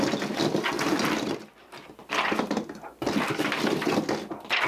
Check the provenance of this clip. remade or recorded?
recorded